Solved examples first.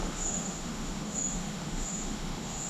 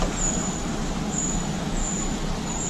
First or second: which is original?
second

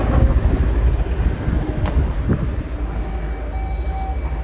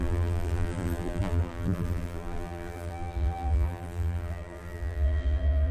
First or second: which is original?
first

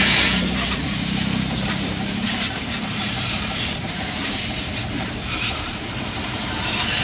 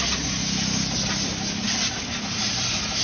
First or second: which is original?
second